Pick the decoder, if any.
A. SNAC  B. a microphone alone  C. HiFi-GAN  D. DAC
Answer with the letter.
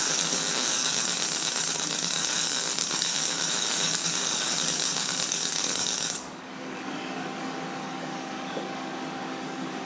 D